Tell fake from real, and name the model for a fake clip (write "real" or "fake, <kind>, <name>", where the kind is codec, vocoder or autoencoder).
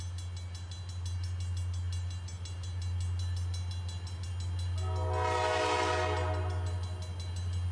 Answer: real